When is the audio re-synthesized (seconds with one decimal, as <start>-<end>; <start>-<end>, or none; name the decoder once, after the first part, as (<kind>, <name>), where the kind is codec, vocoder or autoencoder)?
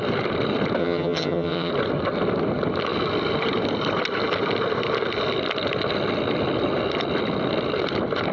0.8-1.7 (vocoder, HiFi-GAN)